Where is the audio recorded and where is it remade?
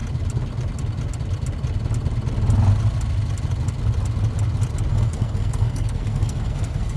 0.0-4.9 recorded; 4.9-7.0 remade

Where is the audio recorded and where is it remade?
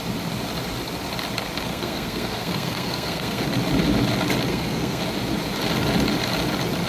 0.0-1.7 recorded; 1.7-3.4 remade; 3.4-4.5 recorded; 4.5-5.0 remade; 5.0-6.9 recorded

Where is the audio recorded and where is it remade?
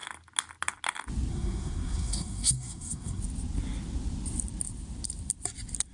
0.0-1.3 recorded; 1.3-3.2 remade; 3.2-5.9 recorded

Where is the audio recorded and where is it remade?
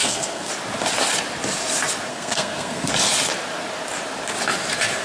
0.0-0.5 remade; 0.5-2.1 recorded; 2.1-2.9 remade; 2.9-5.0 recorded